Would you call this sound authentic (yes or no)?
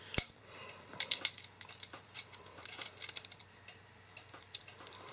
no